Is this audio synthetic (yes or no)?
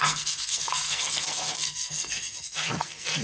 yes